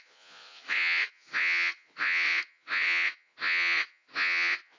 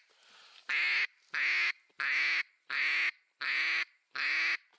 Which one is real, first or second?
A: second